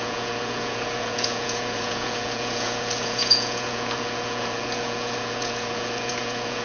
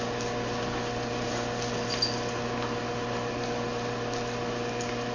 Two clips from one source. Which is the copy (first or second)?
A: first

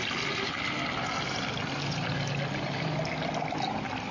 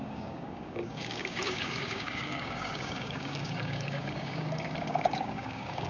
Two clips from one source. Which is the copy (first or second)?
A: second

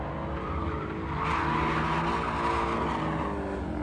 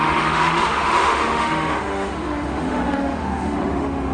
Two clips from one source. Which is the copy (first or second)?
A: second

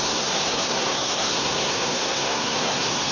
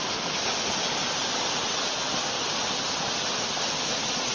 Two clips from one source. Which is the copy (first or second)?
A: first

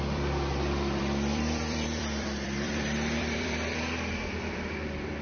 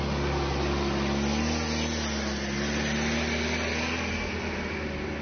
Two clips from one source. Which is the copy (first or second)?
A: first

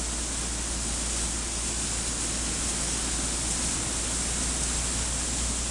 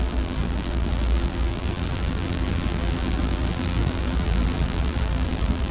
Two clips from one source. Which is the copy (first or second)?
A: second